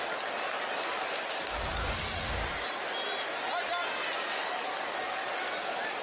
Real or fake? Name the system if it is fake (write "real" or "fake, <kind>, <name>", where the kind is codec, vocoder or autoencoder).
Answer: real